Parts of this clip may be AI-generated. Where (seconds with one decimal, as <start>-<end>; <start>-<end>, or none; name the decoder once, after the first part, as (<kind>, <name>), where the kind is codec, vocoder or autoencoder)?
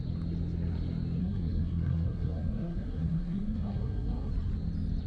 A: 1.2-4.3 (codec, SNAC)